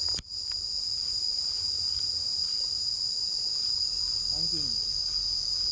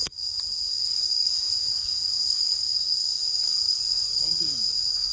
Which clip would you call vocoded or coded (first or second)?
second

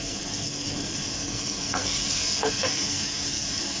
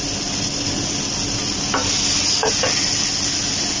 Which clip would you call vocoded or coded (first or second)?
first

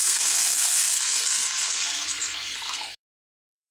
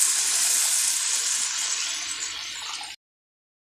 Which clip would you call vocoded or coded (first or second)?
first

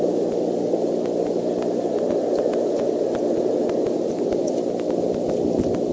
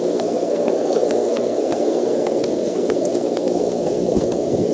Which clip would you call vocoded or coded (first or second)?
second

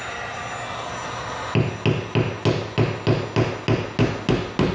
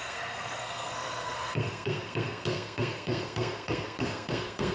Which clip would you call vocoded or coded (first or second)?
second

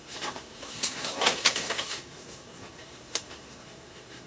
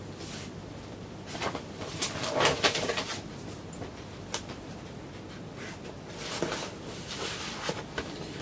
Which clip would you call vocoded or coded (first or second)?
first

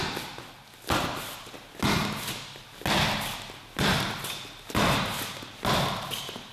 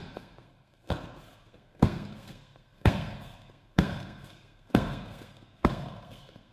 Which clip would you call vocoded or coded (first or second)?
second